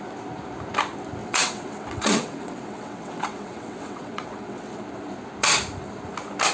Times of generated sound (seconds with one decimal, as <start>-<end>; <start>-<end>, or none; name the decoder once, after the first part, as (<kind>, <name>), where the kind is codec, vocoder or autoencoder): 1.2-4.8 (vocoder, WaveNeXt)